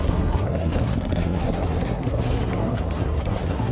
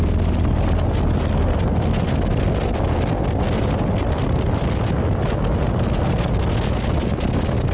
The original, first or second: second